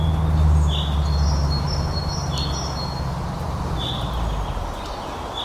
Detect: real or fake real